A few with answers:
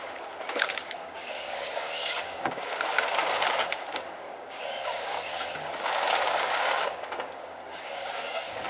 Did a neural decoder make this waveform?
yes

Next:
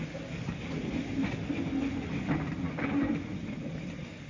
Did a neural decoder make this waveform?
no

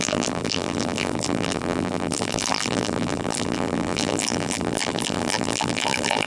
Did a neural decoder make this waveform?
yes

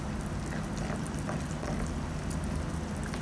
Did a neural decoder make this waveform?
no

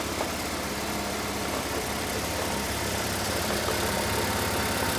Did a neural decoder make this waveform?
yes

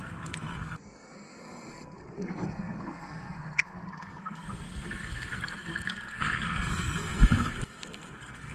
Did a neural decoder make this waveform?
yes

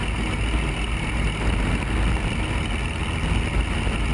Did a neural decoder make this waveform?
no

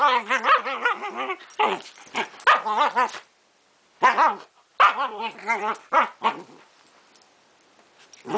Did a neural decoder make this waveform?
no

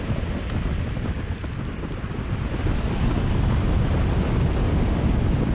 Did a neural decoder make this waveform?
no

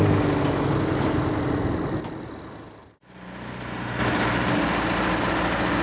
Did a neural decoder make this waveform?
no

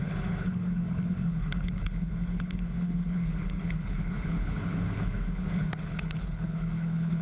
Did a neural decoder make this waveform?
yes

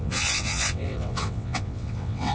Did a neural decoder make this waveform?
yes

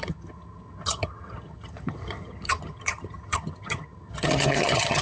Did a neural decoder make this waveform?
yes